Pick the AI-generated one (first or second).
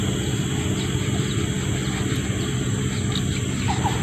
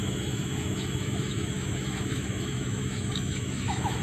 second